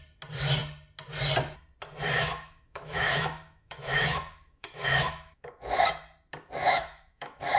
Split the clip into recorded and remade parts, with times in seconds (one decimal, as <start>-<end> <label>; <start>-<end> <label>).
0.0-2.2 recorded; 2.2-5.9 remade; 5.9-6.6 recorded; 6.6-7.6 remade